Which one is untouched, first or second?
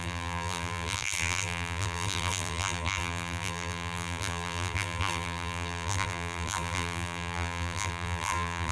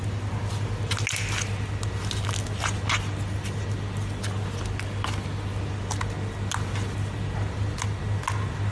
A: second